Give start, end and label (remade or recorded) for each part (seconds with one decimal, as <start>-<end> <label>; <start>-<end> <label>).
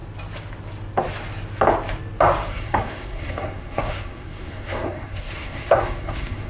0.0-2.5 recorded; 2.5-6.5 remade